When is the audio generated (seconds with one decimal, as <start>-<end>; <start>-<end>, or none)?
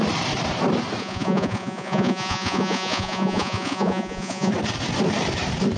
1.0-4.5